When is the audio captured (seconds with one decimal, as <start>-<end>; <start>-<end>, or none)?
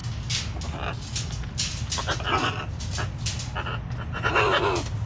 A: 0.0-5.1